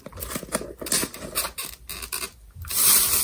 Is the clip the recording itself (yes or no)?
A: yes